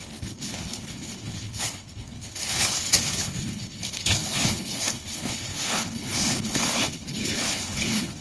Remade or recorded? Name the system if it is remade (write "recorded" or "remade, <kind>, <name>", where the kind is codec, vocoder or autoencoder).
remade, codec, HILCodec